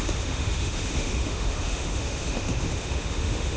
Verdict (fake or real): fake